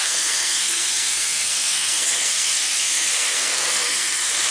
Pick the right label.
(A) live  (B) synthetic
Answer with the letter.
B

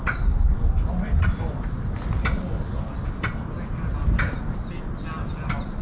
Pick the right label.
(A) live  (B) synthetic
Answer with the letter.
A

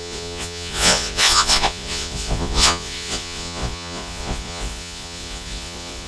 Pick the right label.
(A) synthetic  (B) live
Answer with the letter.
A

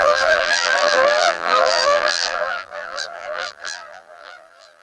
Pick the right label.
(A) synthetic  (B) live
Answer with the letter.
A